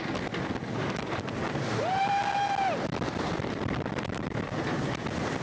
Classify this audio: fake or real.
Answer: real